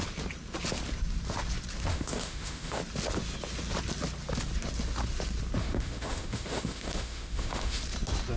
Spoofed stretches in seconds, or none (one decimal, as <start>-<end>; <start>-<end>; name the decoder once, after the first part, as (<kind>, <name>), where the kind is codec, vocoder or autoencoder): 1.9-2.8 (autoencoder, DAC-VAE); 5.6-7.8